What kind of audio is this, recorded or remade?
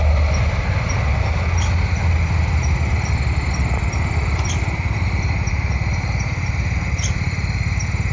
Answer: recorded